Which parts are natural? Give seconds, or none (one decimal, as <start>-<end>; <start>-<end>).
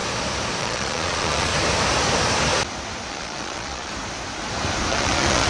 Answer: 0.0-0.6; 1.5-3.1; 3.9-4.9